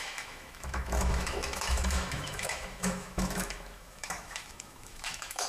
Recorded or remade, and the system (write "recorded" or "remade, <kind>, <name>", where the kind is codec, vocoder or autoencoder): remade, autoencoder, DAC-VAE